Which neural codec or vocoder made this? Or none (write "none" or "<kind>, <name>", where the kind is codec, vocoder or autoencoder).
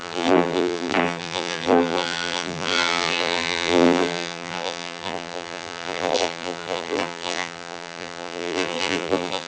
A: vocoder, BigVGAN v2